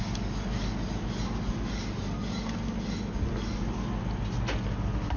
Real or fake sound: real